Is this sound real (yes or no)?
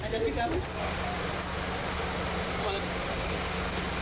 yes